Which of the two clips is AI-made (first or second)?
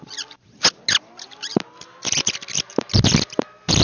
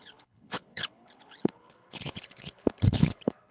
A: second